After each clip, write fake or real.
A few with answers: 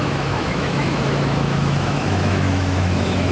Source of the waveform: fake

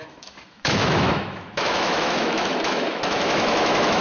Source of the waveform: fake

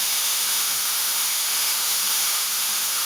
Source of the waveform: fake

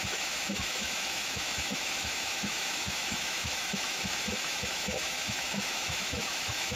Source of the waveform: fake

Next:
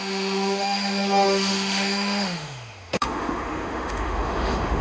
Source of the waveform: fake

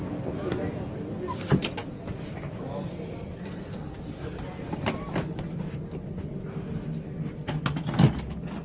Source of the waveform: real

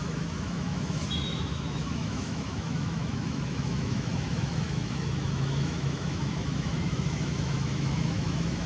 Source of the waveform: fake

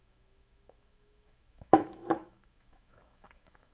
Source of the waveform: fake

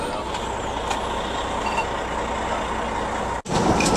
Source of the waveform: real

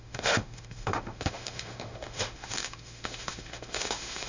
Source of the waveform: fake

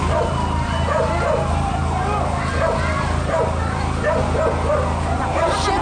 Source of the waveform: real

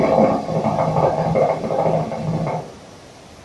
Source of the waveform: real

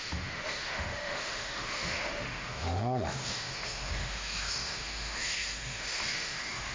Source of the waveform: fake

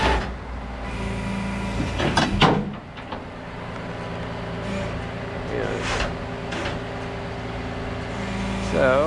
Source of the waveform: real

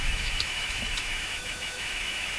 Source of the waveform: fake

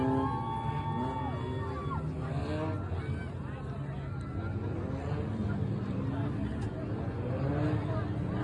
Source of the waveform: real